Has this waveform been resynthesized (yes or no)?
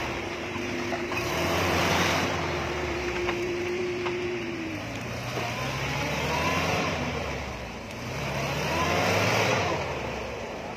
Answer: yes